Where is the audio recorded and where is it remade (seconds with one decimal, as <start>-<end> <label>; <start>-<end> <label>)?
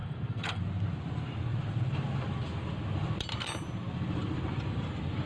0.0-0.6 remade; 0.6-5.3 recorded